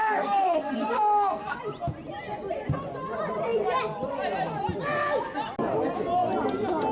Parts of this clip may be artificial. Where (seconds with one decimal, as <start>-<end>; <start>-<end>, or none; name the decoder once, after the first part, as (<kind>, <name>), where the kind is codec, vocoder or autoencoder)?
0.0-1.6 (codec, SNAC)